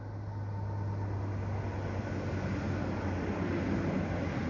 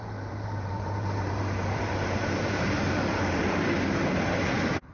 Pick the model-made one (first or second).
second